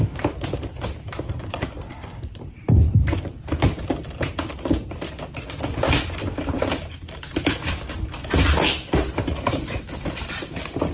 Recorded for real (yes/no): no